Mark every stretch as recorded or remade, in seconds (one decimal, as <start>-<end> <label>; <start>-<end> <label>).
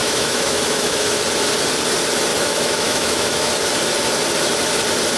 0.0-1.2 remade; 1.2-2.3 recorded; 2.3-3.5 remade; 3.5-5.2 recorded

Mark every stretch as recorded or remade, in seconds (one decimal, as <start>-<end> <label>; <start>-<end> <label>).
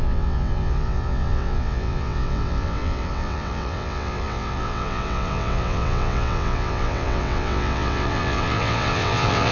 0.0-9.5 remade